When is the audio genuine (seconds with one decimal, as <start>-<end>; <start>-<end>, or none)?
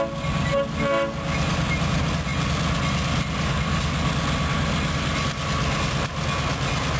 0.0-7.0